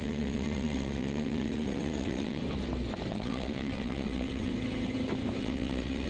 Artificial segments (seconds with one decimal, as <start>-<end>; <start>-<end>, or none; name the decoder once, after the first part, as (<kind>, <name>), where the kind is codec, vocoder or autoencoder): 0.0-2.4 (vocoder, WaveNeXt); 3.1-4.5; 5.4-6.1